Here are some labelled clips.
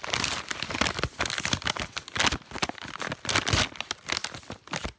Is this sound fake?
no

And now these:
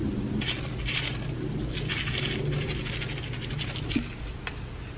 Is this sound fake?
no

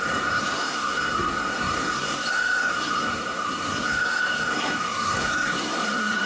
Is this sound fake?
yes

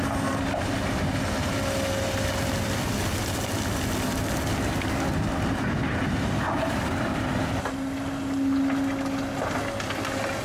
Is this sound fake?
no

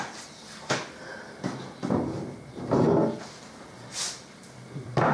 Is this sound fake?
yes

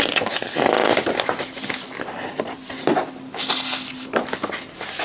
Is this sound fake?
no